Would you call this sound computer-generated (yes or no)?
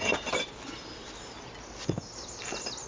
no